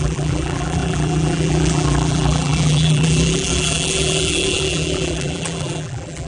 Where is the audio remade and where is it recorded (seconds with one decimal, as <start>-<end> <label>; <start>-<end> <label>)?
0.0-6.3 remade